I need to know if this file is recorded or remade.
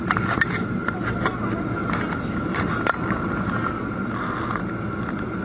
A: recorded